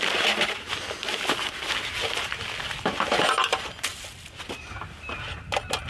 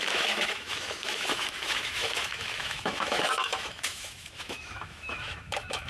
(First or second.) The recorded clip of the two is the first